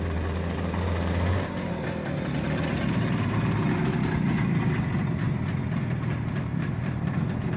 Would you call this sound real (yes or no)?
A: yes